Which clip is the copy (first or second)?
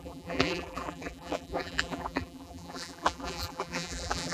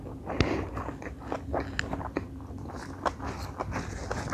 first